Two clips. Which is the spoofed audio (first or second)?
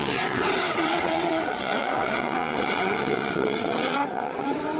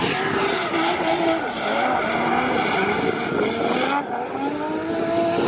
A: first